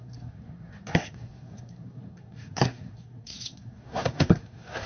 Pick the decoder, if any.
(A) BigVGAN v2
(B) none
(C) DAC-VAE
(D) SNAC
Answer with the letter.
D